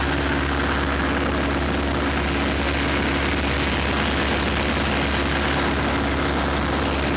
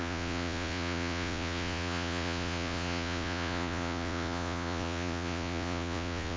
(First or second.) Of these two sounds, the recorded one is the first